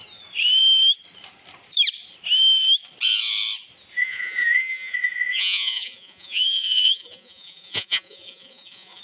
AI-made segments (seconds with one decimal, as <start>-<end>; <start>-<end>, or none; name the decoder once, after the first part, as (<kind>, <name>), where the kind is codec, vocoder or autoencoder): 4.0-9.0 (vocoder, Vocos)